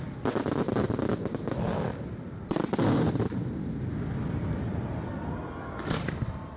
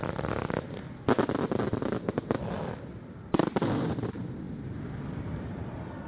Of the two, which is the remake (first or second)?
second